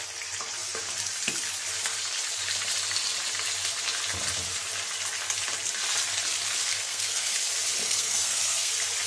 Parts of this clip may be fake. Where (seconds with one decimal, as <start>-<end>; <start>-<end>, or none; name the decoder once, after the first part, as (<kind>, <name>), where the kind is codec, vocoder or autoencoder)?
6.7-7.3 (codec, SNAC); 7.8-8.7